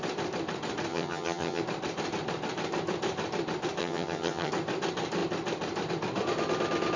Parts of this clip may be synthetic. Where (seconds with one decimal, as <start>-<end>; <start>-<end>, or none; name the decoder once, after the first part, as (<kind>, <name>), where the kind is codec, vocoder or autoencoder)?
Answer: 0.9-1.6 (vocoder, HiFi-GAN); 3.8-4.5